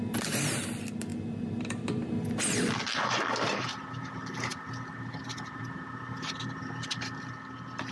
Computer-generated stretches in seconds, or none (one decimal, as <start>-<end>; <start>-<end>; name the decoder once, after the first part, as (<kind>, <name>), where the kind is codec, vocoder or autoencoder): 0.0-7.9 (vocoder, BigVGAN v2)